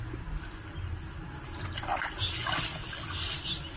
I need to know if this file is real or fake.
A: real